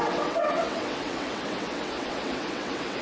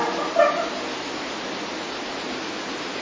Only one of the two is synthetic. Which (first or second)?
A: first